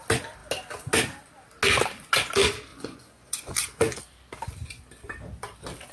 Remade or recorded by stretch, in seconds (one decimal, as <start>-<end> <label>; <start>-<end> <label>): 0.0-2.7 recorded; 2.7-4.0 remade; 4.0-5.9 recorded